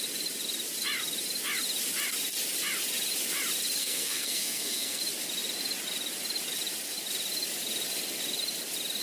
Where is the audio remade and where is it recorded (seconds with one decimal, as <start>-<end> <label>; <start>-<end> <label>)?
0.0-3.8 recorded; 3.8-5.0 remade; 5.0-9.0 recorded